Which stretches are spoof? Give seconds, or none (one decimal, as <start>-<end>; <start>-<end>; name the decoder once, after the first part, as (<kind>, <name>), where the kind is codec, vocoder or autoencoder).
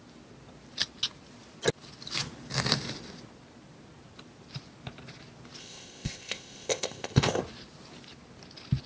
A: 5.6-7.4 (codec, ZipCodec)